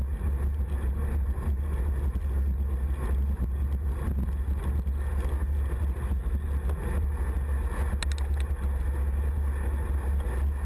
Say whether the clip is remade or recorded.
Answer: recorded